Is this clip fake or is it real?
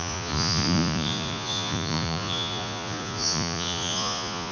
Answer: fake